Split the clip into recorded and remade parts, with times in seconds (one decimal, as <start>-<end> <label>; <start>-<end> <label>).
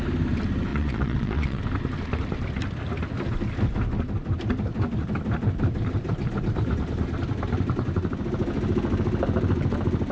0.0-0.7 recorded; 0.7-1.6 remade; 1.6-10.1 recorded